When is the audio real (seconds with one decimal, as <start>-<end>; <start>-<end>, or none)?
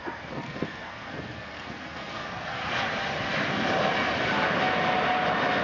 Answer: 2.6-5.6